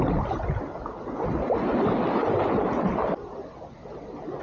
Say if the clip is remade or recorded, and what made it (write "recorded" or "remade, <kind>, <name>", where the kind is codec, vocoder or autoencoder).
recorded